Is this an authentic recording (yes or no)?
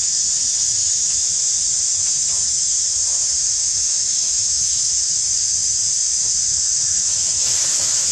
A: no